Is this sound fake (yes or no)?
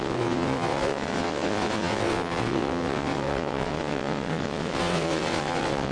yes